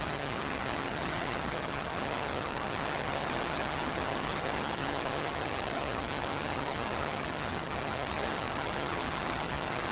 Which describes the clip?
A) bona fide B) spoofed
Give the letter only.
B